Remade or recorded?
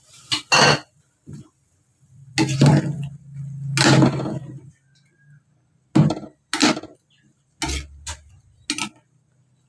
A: recorded